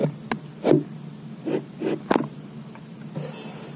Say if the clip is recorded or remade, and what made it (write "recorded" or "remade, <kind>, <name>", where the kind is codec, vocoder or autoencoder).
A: recorded